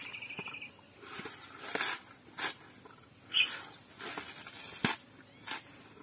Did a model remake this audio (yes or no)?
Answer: no